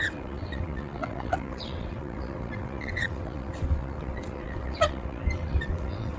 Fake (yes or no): yes